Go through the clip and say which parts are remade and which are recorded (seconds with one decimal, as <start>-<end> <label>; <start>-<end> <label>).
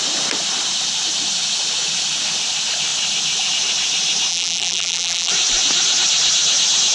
0.0-4.3 recorded; 4.3-5.3 remade; 5.3-6.9 recorded